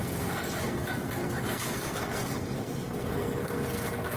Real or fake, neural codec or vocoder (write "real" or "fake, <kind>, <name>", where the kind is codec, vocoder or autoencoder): fake, codec, SNAC